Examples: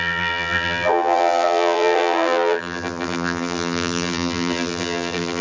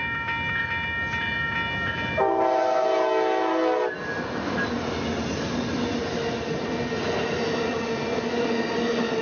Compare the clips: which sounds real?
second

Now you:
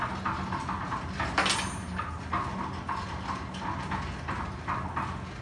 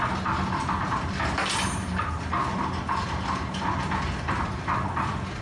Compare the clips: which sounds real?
first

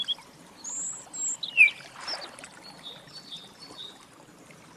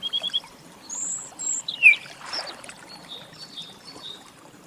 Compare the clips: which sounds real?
first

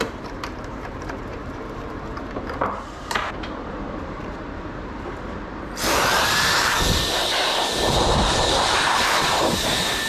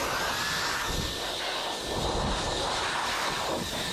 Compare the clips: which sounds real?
second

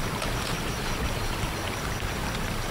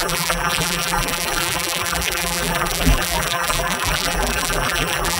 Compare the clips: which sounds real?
first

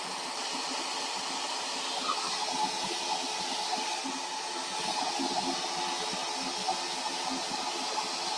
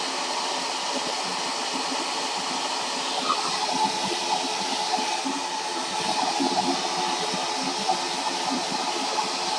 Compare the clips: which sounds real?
first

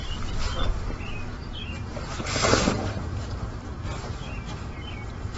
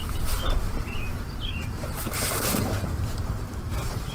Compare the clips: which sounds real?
first